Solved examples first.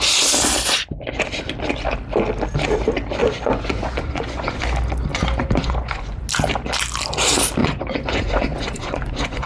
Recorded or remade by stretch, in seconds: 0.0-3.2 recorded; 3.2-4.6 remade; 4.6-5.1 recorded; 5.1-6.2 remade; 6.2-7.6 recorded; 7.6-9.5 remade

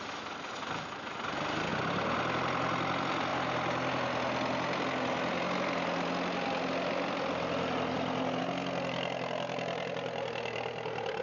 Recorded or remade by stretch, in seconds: 0.0-11.2 recorded